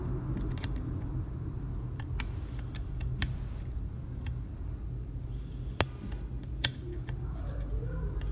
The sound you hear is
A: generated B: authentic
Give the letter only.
B